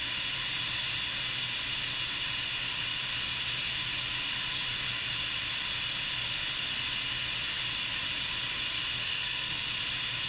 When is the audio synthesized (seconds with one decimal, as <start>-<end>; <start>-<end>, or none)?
9.0-9.7